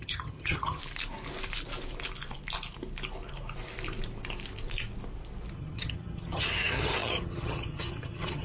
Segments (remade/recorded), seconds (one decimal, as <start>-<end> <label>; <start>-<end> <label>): 0.0-0.8 remade; 0.8-5.5 recorded; 5.5-8.4 remade